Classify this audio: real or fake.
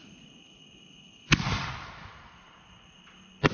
real